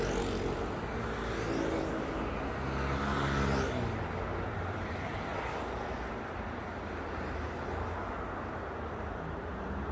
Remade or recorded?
recorded